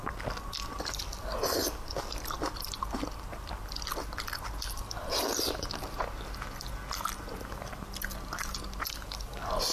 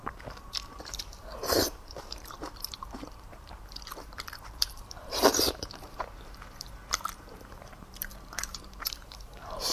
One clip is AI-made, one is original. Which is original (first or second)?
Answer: first